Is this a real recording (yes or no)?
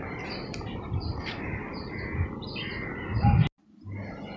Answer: yes